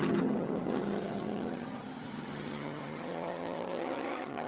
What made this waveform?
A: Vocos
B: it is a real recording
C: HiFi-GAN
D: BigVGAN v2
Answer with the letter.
C